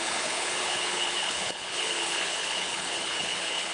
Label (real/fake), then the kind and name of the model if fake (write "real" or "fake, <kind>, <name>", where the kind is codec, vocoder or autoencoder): fake, codec, HILCodec